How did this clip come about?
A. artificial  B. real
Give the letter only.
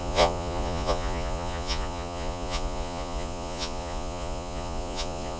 A